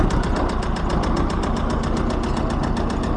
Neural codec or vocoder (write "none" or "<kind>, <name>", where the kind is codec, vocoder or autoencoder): none